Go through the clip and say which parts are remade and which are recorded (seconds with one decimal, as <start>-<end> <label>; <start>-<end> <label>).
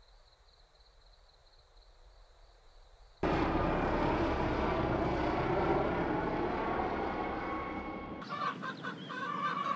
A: 0.0-9.8 recorded